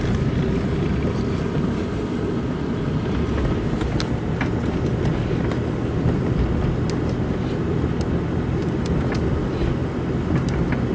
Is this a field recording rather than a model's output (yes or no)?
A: yes